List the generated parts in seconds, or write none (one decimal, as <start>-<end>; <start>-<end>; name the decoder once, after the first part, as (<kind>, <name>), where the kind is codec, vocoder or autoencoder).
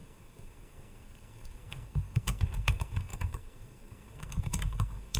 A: 0.0-5.2 (codec, SNAC)